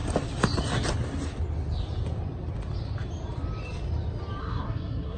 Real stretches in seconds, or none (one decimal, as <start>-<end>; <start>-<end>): 0.0-4.4